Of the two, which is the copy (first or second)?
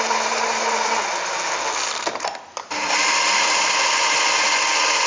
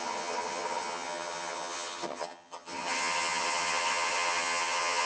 second